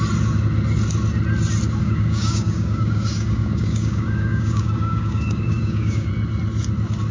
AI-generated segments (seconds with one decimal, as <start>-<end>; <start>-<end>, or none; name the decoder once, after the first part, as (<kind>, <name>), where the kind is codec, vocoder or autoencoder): 1.8-6.1 (codec, DAC)